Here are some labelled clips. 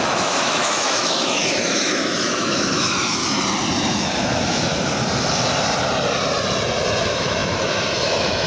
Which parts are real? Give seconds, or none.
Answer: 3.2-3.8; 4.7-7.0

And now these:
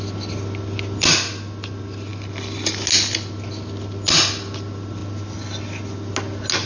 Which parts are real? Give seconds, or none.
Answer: 0.0-6.7

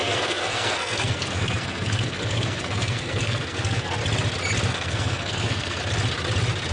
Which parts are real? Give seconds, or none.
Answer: 4.0-4.7; 5.8-6.7

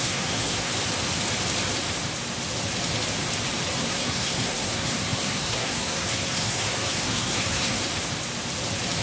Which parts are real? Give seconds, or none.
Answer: 0.7-3.8; 7.8-9.0

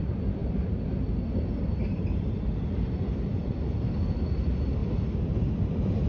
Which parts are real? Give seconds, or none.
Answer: 0.0-6.1

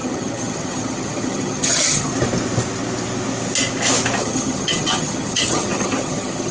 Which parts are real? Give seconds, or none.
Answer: 2.1-4.2

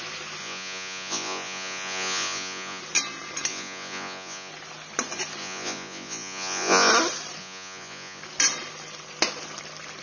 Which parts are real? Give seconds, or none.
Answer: 0.0-0.4; 2.8-3.5; 4.5-5.4; 6.9-7.4; 8.2-10.0